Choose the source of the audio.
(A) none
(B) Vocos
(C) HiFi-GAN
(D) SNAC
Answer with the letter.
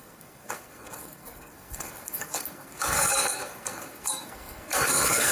D